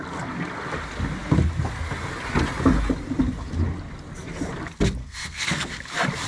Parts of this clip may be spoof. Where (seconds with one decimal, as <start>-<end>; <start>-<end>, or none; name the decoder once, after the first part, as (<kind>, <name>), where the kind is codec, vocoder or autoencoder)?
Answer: 5.0-5.7 (codec, SNAC)